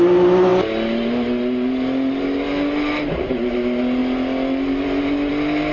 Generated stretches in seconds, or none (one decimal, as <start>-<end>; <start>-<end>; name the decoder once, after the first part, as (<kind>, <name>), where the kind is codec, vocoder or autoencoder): none